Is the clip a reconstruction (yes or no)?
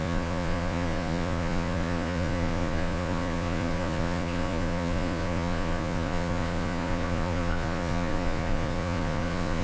yes